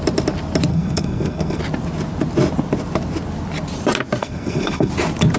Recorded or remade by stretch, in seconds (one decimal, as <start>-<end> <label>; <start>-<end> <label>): 0.0-0.7 recorded; 0.7-1.6 remade; 1.6-4.2 recorded; 4.2-4.9 remade; 4.9-5.4 recorded